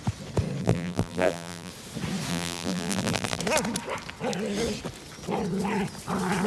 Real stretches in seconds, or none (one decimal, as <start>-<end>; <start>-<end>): 0.0-0.6; 1.7-2.3; 3.4-6.5